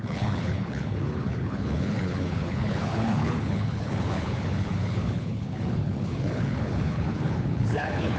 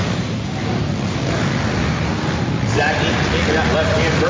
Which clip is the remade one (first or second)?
first